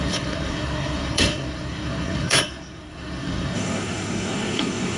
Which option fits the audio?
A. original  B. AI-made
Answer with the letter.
B